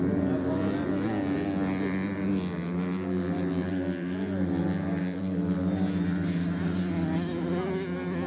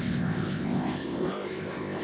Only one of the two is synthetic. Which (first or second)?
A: second